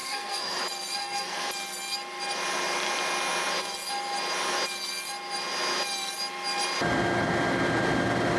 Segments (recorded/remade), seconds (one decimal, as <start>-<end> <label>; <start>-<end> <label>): 0.0-0.6 remade; 0.6-1.0 recorded; 1.0-1.5 remade; 1.5-8.4 recorded